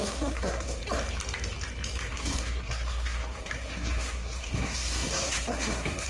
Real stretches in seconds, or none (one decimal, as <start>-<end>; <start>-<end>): 0.8-2.1